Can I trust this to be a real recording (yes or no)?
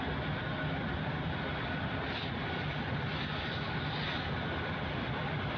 yes